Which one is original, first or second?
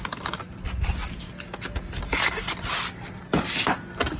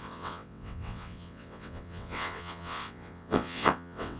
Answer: first